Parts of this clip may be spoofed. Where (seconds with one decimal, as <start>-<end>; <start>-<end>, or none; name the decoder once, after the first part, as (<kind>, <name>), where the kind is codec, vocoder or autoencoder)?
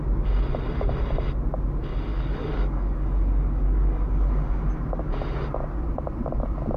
2.1-4.6 (codec, DAC)